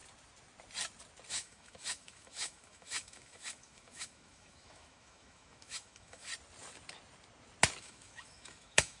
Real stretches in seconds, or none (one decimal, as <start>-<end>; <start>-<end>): 0.0-1.3; 6.3-7.8